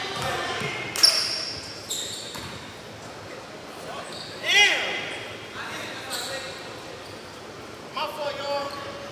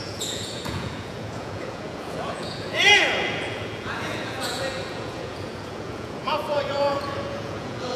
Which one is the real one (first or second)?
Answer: first